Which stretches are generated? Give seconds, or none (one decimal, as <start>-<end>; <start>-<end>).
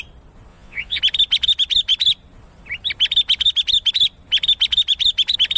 0.5-1.0